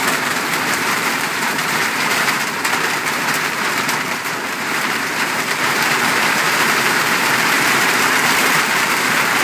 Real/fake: fake